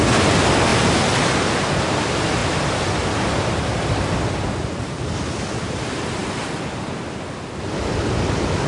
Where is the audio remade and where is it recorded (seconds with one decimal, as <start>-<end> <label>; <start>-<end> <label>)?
0.0-8.7 recorded